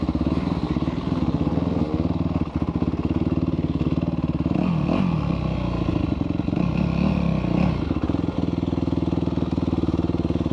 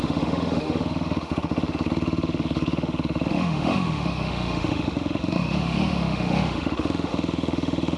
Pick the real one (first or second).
first